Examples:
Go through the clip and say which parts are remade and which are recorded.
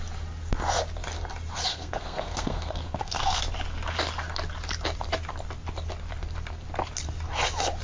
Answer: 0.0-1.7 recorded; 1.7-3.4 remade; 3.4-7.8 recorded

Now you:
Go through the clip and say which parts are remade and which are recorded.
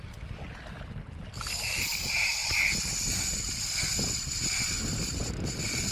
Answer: 0.0-5.9 recorded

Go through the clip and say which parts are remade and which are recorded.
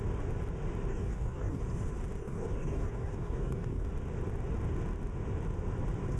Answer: 0.0-0.9 recorded; 0.9-1.6 remade; 1.6-2.2 recorded; 2.2-3.9 remade; 3.9-6.2 recorded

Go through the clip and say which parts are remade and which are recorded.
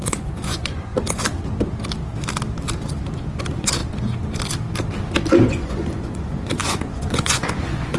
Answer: 0.0-0.9 remade; 0.9-3.4 recorded; 3.4-3.8 remade; 3.8-5.4 recorded; 5.4-8.0 remade